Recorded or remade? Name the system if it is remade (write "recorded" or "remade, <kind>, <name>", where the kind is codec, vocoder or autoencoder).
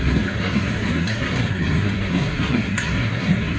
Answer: remade, codec, SNAC